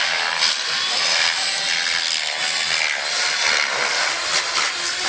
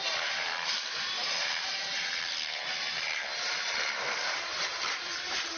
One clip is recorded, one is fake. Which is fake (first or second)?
second